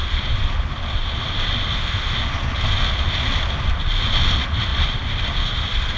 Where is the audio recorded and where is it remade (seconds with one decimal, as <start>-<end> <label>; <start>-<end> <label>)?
0.0-4.7 recorded; 4.7-6.0 remade

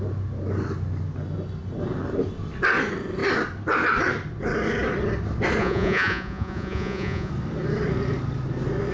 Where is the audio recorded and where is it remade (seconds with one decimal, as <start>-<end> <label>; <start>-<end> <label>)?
0.0-5.6 recorded; 5.6-7.3 remade; 7.3-8.9 recorded

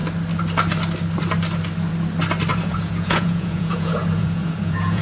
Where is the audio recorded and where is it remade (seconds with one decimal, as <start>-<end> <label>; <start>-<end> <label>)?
0.0-2.5 recorded; 2.5-5.0 remade

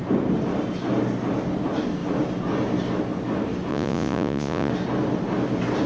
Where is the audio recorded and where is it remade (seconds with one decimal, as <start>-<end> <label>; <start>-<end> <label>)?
0.0-3.7 recorded; 3.7-4.7 remade; 4.7-5.9 recorded

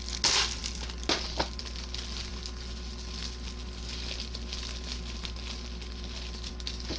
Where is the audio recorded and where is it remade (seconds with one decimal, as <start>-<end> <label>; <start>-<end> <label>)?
0.0-7.0 recorded